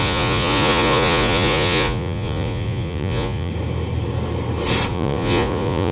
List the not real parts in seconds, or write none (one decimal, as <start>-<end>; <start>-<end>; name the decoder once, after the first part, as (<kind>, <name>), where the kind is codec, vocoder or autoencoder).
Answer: 0.0-3.5 (vocoder, Vocos); 4.9-5.9